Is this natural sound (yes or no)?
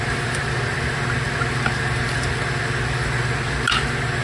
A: yes